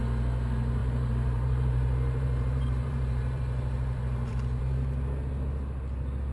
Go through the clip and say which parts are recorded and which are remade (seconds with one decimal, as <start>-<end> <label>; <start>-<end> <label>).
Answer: 0.0-0.8 recorded; 0.8-4.6 remade; 4.6-6.3 recorded